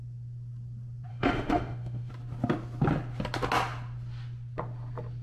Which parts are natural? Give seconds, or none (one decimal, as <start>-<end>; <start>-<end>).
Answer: 0.0-1.1; 2.1-5.2